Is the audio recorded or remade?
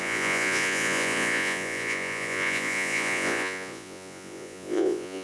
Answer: remade